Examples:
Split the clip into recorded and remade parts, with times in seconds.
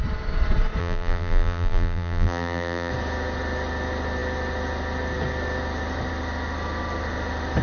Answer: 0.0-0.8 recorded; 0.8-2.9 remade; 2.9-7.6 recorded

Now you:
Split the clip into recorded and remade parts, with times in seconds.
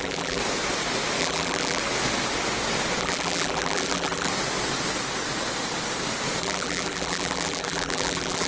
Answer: 0.0-0.4 remade; 0.4-1.2 recorded; 1.2-1.8 remade; 1.8-3.0 recorded; 3.0-4.3 remade; 4.3-6.4 recorded; 6.4-8.5 remade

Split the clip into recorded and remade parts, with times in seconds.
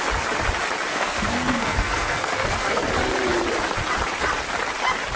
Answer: 0.0-0.9 recorded; 0.9-2.9 remade; 2.9-5.2 recorded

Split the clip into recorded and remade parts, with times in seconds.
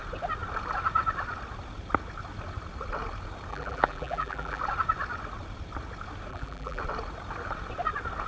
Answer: 0.0-3.5 recorded; 3.5-4.6 remade; 4.6-6.3 recorded; 6.3-6.8 remade; 6.8-8.3 recorded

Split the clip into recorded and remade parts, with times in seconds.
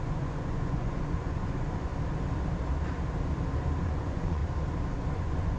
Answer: 0.0-1.9 remade; 1.9-3.8 recorded; 3.8-4.4 remade; 4.4-5.1 recorded; 5.1-5.6 remade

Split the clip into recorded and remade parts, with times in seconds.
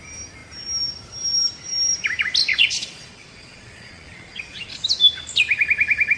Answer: 0.0-2.5 recorded; 2.5-4.7 remade; 4.7-6.2 recorded